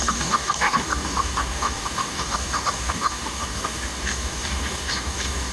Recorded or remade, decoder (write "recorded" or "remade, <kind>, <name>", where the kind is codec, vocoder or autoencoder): remade, codec, DAC